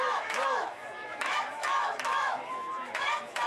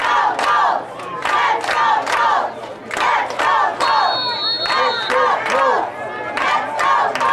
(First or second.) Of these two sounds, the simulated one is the first